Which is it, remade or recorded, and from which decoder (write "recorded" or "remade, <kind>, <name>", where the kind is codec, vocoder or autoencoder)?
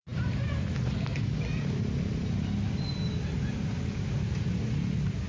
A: recorded